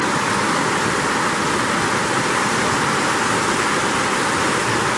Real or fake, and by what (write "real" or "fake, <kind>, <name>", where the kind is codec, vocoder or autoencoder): real